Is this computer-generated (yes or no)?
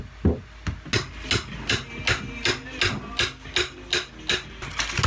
no